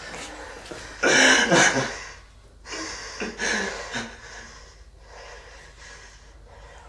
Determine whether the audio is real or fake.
real